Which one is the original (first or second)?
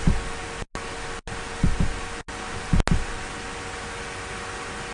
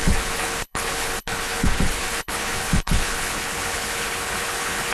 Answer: first